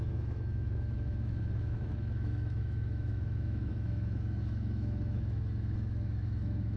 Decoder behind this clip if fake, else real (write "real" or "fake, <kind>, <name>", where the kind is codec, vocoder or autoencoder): fake, autoencoder, DAC-VAE